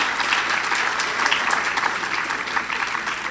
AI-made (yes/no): no